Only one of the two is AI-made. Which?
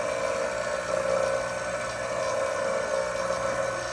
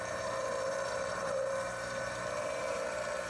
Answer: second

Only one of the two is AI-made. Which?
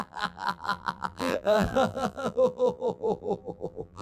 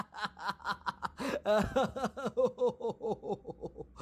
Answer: first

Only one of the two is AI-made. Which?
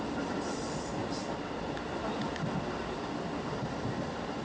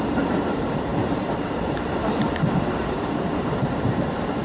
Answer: second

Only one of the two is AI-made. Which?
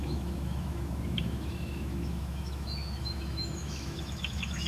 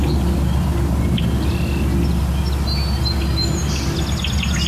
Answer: first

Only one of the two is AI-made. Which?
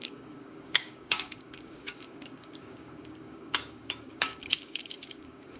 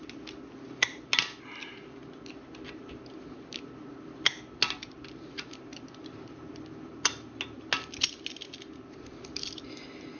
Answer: first